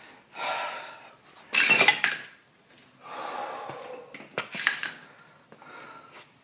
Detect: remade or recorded recorded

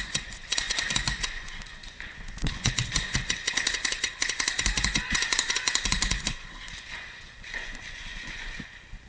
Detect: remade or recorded remade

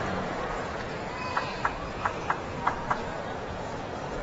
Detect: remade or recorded remade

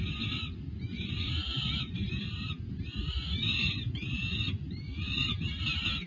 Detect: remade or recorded recorded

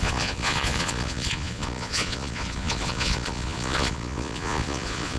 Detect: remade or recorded remade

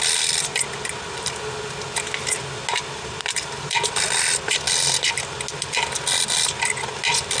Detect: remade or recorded recorded